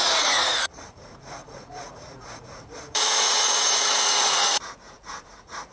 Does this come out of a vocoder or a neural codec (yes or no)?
yes